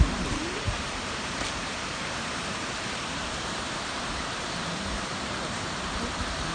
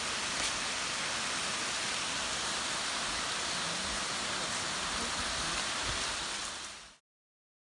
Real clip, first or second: second